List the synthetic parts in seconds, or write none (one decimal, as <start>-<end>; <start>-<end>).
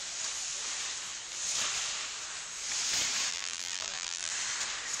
3.3-4.3